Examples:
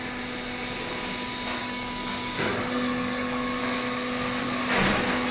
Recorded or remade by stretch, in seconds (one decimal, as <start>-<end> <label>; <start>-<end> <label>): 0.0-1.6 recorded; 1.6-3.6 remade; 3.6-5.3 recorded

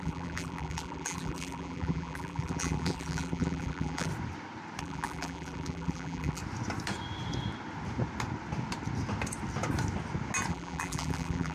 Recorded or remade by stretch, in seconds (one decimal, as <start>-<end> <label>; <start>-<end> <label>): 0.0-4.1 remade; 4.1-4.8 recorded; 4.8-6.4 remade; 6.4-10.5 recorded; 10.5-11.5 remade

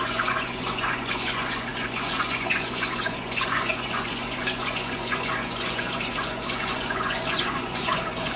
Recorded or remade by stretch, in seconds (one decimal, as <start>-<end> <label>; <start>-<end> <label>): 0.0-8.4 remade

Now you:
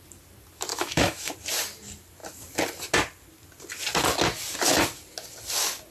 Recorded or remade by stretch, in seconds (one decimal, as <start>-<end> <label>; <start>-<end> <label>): 0.0-0.7 recorded; 0.7-1.3 remade; 1.3-5.9 recorded

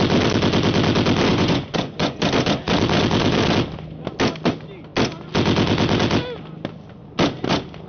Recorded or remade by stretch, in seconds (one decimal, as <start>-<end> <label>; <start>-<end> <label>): 0.0-1.3 recorded; 1.3-2.2 remade; 2.2-7.9 recorded

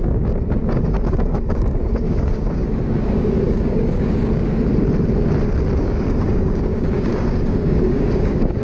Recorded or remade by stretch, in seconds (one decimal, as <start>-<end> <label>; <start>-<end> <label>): 0.0-4.7 remade; 4.7-5.8 recorded; 5.8-8.6 remade

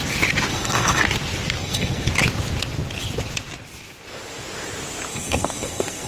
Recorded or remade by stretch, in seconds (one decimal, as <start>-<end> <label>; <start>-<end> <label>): 0.0-0.5 recorded; 0.5-1.0 remade; 1.0-1.6 recorded; 1.6-2.1 remade; 2.1-5.1 recorded; 5.1-6.1 remade

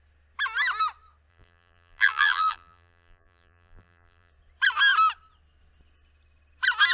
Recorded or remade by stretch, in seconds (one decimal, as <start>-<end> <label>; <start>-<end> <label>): 0.0-1.3 recorded; 1.3-4.3 remade; 4.3-6.9 recorded